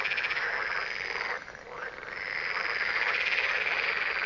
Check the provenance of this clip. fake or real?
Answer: real